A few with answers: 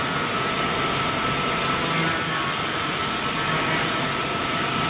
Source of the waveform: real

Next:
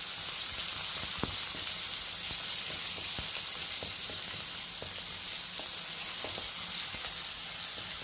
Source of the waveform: real